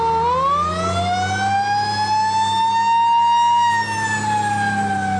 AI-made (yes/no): no